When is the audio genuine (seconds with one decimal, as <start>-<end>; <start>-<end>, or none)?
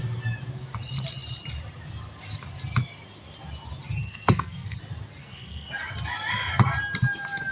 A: 0.0-4.0; 4.8-5.2; 5.7-7.5